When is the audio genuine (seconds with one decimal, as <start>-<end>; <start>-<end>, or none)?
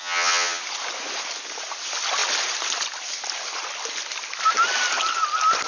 0.6-5.7